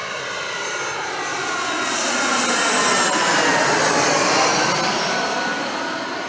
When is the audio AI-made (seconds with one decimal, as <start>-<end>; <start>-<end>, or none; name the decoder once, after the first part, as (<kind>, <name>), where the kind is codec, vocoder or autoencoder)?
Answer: 0.0-0.8 (vocoder, BigVGAN v2)